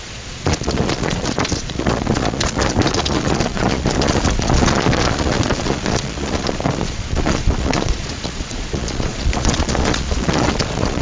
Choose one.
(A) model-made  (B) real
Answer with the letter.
A